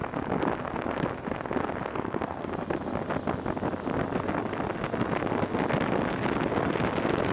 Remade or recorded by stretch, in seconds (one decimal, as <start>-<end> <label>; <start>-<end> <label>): 0.0-1.9 recorded; 1.9-2.5 remade; 2.5-7.3 recorded